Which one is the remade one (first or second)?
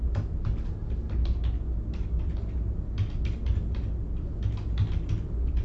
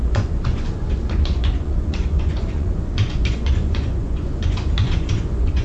second